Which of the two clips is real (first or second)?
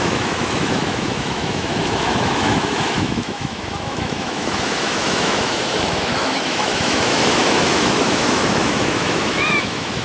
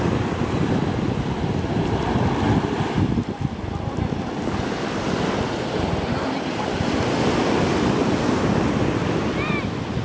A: second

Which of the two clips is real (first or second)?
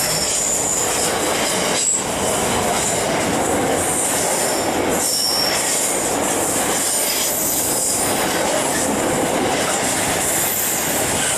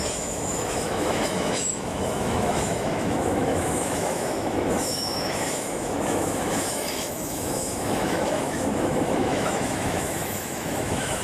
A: first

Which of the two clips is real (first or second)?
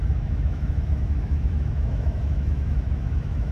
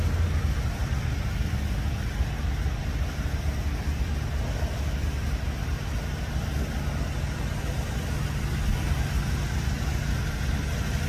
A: second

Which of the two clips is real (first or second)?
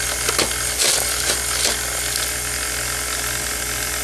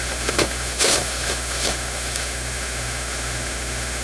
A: first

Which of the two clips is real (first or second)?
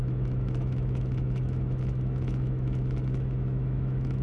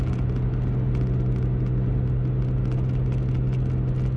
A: second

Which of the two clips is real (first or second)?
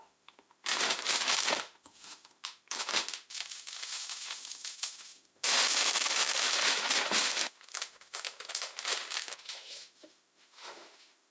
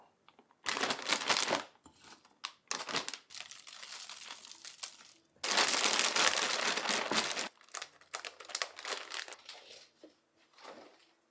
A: second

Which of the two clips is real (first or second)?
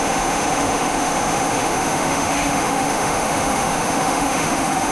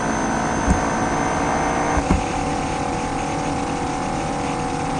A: second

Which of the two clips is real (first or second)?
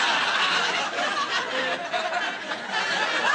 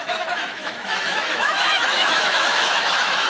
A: first